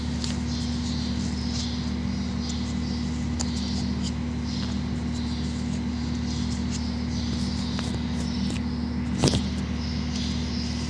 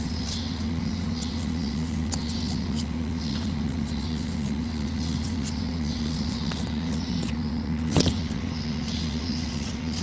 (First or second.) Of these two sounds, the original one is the first